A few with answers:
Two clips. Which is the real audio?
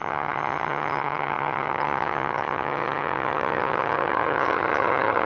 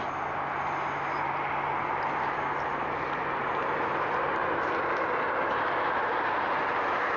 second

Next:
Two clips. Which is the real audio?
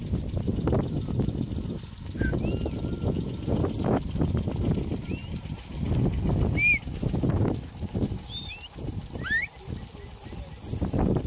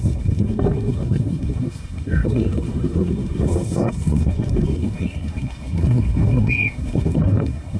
first